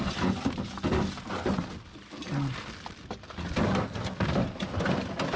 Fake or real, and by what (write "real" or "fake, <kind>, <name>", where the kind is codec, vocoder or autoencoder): real